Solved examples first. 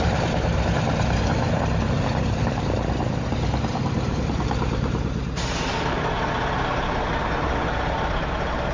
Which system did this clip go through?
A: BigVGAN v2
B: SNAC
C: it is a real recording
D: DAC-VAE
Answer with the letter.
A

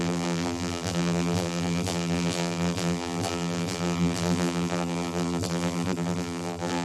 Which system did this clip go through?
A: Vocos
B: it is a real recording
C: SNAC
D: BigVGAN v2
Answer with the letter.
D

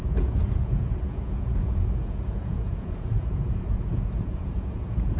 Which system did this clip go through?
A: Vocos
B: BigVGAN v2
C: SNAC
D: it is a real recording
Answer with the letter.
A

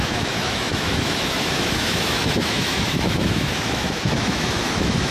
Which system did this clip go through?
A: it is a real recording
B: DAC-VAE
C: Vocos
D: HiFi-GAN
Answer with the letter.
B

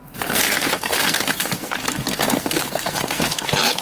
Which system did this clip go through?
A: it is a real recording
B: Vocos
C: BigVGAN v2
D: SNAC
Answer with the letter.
D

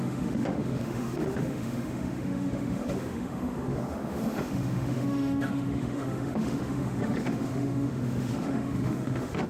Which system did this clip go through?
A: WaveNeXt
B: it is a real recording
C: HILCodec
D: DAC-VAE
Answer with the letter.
D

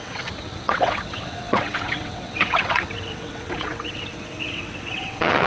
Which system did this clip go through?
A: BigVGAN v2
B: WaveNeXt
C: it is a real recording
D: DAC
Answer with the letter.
B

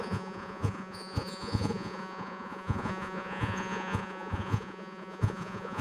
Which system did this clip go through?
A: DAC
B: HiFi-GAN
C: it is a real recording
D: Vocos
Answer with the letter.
D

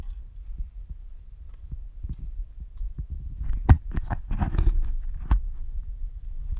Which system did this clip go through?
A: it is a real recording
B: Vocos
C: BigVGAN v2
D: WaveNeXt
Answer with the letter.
A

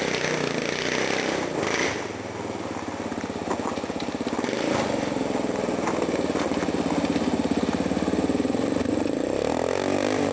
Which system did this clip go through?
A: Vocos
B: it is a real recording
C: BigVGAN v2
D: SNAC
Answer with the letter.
B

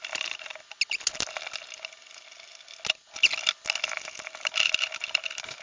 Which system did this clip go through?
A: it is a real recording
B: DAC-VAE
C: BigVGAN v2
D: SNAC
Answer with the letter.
A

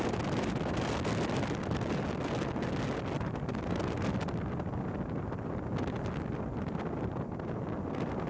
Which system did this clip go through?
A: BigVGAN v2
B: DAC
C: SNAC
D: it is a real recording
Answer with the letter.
D